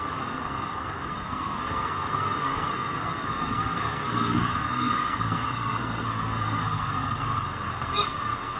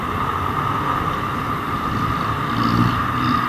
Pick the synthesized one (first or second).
first